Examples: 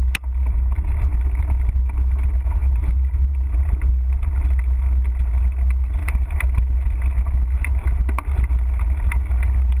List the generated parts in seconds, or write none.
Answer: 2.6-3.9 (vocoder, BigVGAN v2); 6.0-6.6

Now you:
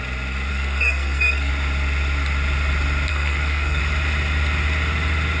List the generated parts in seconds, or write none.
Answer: 0.5-1.5 (codec, SNAC); 3.1-3.8

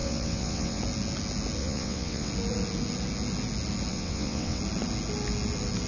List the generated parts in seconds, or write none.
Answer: 0.0-0.8 (vocoder, WaveNeXt); 1.6-2.3; 3.9-4.6

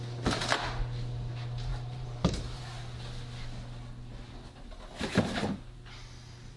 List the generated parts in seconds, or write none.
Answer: 1.7-2.6 (vocoder, BigVGAN v2)

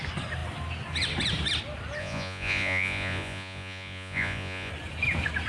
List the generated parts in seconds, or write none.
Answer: 2.0-4.7 (vocoder, Vocos)

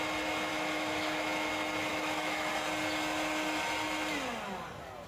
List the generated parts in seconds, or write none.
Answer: 0.5-1.5 (autoencoder, DAC-VAE); 1.9-2.5